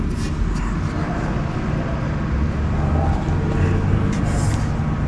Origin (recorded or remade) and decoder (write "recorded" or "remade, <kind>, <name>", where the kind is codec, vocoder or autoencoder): recorded